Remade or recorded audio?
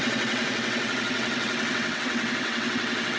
remade